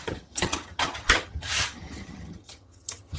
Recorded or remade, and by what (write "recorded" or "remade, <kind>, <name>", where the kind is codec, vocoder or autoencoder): remade, vocoder, HiFi-GAN